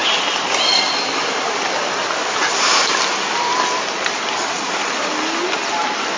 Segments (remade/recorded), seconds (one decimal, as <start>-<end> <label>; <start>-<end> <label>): 0.0-6.2 recorded